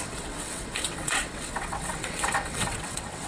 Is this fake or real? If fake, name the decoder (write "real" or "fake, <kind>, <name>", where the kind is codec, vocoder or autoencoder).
fake, vocoder, WaveNeXt